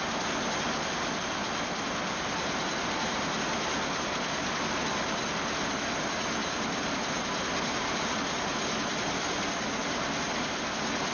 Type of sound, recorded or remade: recorded